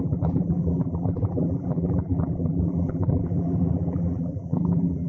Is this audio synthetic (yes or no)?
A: yes